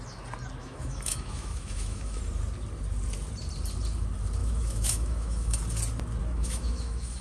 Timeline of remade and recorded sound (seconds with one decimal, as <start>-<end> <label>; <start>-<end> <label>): 0.0-0.6 recorded; 0.6-2.2 remade; 2.2-4.4 recorded; 4.4-5.6 remade; 5.6-6.2 recorded; 6.2-7.2 remade